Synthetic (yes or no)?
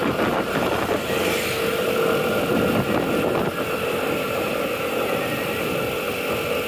no